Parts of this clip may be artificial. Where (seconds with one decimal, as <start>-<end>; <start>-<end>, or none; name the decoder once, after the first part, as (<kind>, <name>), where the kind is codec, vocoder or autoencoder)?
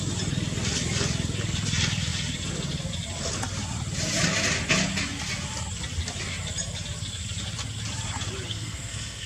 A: 8.5-9.3 (codec, SNAC)